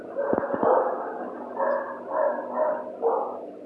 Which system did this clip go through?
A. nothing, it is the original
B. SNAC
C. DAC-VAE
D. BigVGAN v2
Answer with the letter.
A